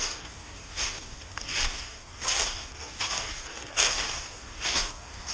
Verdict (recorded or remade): remade